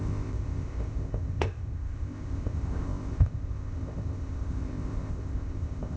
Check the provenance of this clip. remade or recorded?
remade